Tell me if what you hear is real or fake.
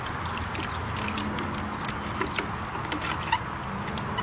real